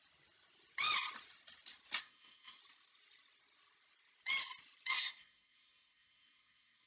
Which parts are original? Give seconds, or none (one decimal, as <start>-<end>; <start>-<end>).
0.0-2.0; 2.6-4.9

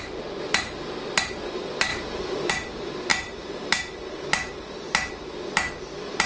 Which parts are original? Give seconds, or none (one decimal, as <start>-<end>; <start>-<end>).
0.0-6.3

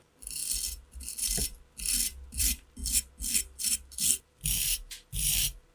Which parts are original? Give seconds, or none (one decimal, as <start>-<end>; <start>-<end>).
0.4-2.4; 2.8-3.6

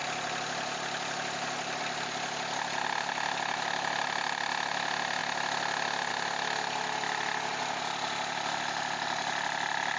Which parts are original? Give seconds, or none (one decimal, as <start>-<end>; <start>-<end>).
0.0-10.0

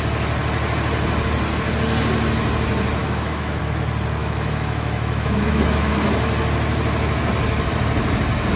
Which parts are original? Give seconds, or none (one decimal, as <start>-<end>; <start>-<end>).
0.0-3.0; 3.6-4.2; 5.9-8.6

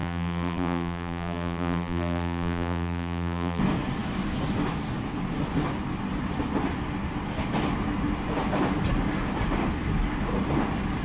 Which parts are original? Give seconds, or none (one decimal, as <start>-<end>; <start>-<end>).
3.6-11.0

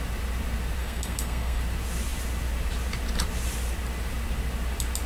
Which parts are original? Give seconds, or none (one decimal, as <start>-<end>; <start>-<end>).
0.0-0.8; 1.6-5.1